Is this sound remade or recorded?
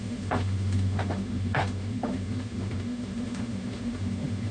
remade